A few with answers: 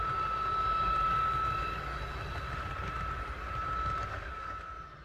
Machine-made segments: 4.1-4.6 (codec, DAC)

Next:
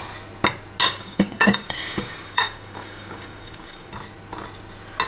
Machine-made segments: 0.8-3.9 (codec, DAC)

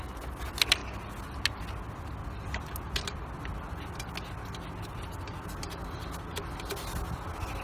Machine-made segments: none

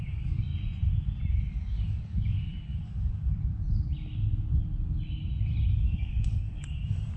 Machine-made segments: 0.0-0.5 (codec, DAC); 1.3-3.3; 5.7-7.2

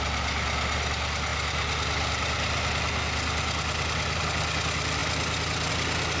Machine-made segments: none

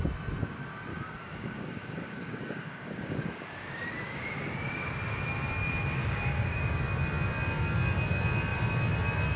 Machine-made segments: 0.9-4.9 (codec, DAC); 6.0-6.8

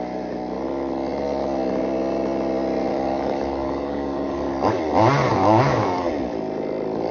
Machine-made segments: 2.9-4.8 (codec, DAC); 5.3-6.1

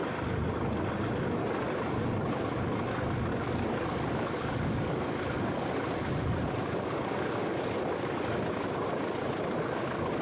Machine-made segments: 3.3-4.8 (codec, DAC); 6.6-7.3